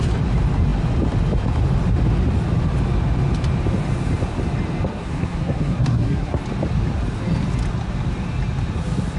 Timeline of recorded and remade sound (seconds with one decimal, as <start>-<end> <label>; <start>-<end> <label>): 0.0-4.9 recorded; 4.9-6.4 remade; 6.4-9.2 recorded